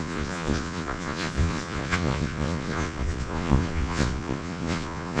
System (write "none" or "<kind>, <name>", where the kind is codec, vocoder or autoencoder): vocoder, Vocos